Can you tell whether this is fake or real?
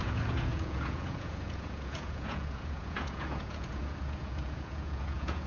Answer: fake